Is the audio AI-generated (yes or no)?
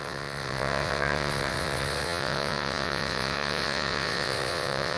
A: yes